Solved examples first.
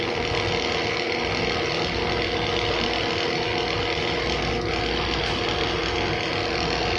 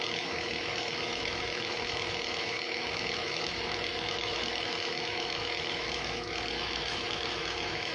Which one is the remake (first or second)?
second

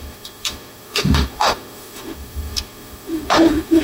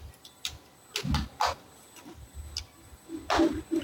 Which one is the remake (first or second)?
first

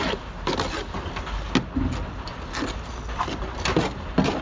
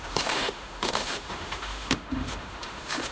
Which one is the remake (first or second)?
second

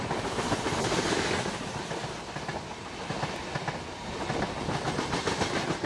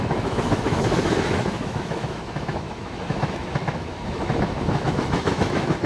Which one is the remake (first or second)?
second